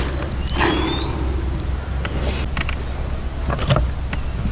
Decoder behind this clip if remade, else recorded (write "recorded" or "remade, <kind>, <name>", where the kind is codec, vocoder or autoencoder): recorded